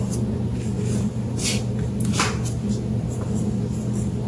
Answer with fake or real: real